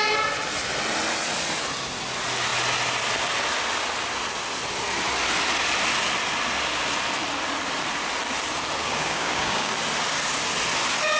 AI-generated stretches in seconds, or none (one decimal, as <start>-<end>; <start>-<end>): 8.8-9.7